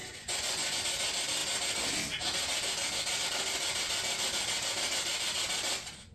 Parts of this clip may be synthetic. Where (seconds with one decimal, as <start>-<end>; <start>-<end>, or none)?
0.0-0.8